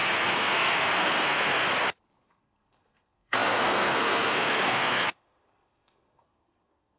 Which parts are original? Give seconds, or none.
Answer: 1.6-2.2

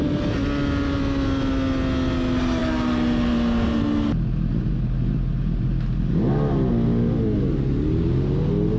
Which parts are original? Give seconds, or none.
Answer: 0.0-8.8

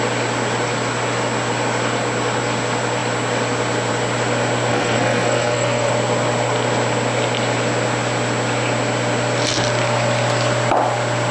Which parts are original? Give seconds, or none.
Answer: 0.0-4.7; 5.9-11.3

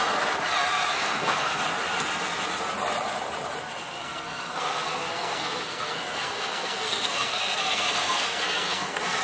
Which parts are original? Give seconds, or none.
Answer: 0.0-0.9; 1.6-3.8

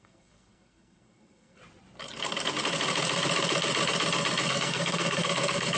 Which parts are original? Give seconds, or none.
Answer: 1.6-4.5

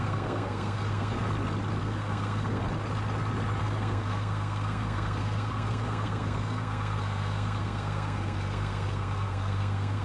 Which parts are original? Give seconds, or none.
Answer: 1.2-1.8; 2.6-3.6

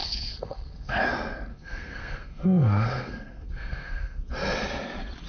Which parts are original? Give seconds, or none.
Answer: 1.0-1.5; 4.3-5.3

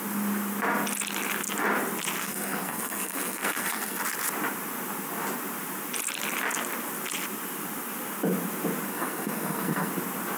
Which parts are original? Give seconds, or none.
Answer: 0.0-2.2; 4.0-8.9; 9.9-10.4